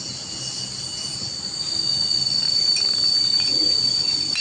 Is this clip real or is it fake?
real